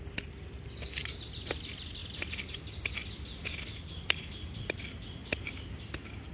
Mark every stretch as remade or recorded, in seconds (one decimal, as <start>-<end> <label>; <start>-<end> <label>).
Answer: 0.0-6.3 recorded